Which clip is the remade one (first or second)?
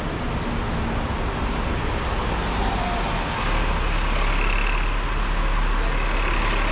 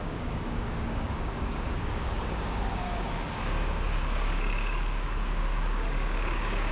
second